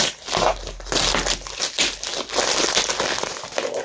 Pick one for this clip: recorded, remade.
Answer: recorded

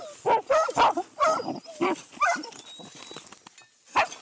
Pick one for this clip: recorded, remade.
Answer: recorded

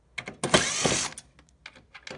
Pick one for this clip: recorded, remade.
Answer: recorded